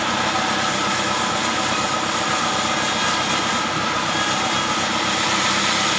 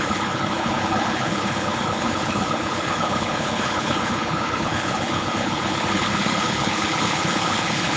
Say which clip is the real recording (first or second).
first